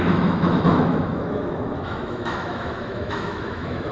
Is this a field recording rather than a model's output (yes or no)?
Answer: no